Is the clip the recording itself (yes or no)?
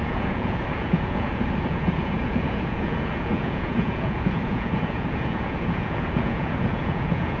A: no